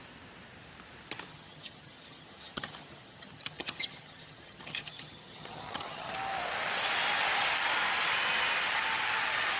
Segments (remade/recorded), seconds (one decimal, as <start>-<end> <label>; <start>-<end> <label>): 0.0-1.3 recorded; 1.3-6.1 remade; 6.1-9.6 recorded